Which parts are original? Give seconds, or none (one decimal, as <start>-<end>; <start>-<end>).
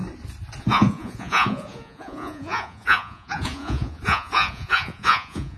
0.0-0.6